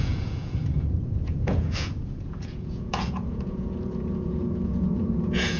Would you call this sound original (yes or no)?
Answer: no